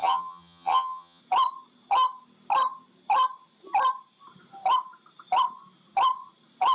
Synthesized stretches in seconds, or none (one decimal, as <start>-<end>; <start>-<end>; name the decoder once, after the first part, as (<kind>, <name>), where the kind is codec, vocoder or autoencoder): 0.0-1.2 (vocoder, HiFi-GAN)